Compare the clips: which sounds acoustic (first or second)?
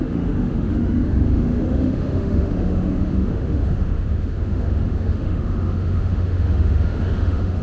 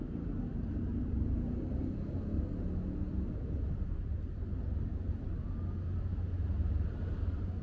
second